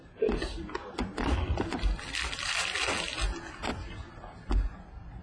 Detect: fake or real real